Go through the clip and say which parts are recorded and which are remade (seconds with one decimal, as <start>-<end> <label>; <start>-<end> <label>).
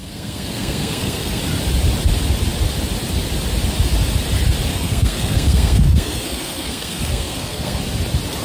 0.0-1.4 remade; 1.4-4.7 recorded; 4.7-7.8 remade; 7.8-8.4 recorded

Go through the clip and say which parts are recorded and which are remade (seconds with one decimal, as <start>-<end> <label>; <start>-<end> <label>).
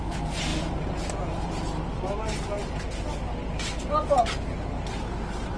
0.0-5.6 recorded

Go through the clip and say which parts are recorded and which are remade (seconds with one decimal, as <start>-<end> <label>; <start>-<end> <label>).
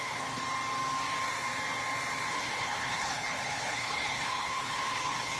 0.0-0.4 remade; 0.4-2.3 recorded; 2.3-5.4 remade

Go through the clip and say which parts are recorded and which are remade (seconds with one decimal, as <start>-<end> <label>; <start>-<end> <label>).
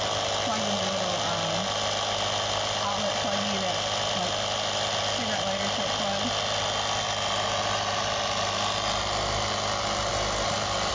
0.0-10.9 recorded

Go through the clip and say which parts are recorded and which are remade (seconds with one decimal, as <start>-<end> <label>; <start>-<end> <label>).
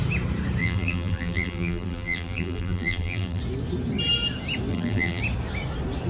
0.0-0.6 recorded; 0.6-3.4 remade; 3.4-4.7 recorded; 4.7-5.2 remade; 5.2-6.1 recorded